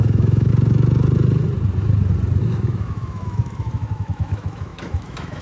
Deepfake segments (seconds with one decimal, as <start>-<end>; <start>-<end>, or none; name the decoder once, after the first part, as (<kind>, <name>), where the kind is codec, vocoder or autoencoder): 0.0-0.5 (autoencoder, DAC-VAE); 2.4-5.4